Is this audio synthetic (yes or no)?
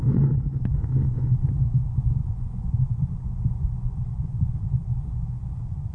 yes